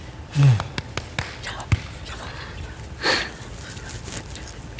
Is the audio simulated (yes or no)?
no